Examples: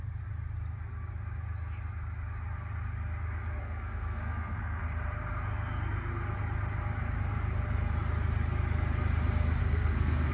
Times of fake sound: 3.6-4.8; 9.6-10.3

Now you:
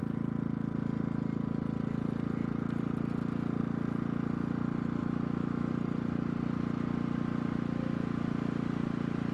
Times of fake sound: 5.0-5.7

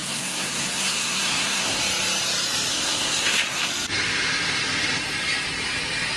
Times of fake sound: 0.0-1.8; 2.7-3.7

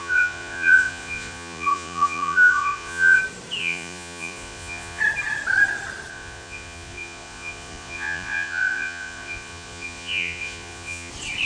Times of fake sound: 0.0-3.2; 3.6-5.0; 6.1-11.1

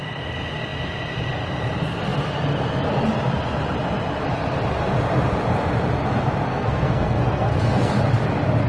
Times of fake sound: 6.5-7.9

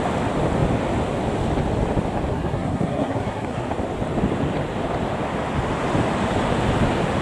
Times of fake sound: 2.3-3.7

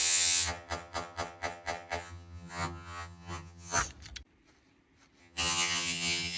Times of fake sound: 0.0-3.8; 5.2-6.4

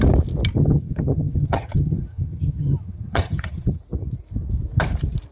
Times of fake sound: 0.6-3.8